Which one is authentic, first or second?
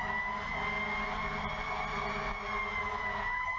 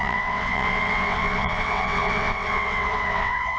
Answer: first